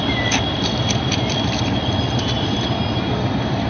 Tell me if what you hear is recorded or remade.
remade